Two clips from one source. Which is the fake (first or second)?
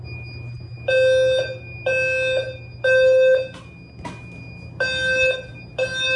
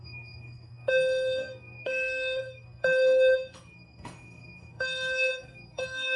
second